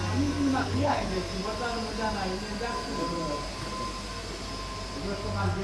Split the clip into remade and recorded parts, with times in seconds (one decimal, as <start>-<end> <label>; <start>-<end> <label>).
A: 0.0-0.6 recorded; 0.6-1.1 remade; 1.1-5.6 recorded